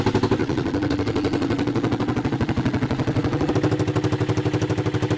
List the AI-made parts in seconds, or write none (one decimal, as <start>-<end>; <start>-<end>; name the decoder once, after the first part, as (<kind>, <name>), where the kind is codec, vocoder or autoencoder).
0.4-3.5 (vocoder, Vocos)